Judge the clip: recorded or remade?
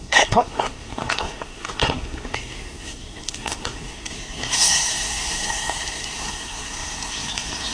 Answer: remade